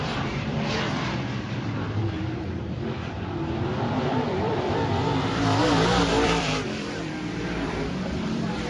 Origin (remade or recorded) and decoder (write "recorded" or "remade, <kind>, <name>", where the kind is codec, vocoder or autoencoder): remade, vocoder, BigVGAN v2